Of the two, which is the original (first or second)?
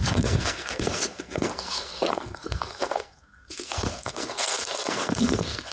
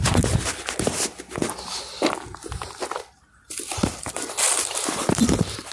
second